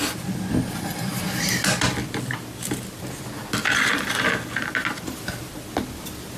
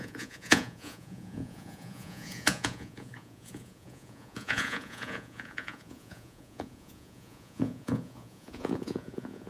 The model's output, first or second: second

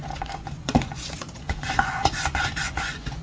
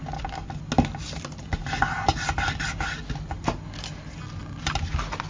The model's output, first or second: first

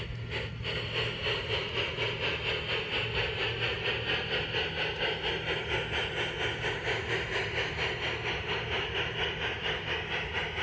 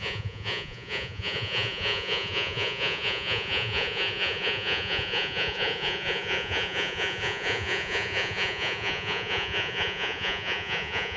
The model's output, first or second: second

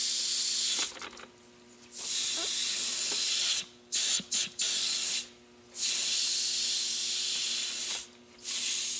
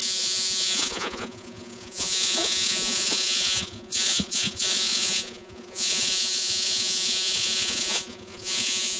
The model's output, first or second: second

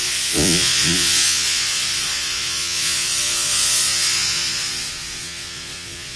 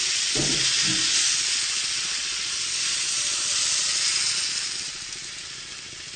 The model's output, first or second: first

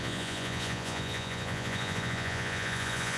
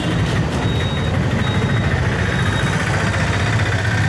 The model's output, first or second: first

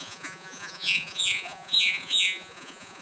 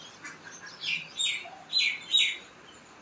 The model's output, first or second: first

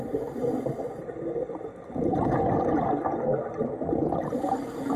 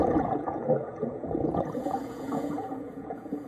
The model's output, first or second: second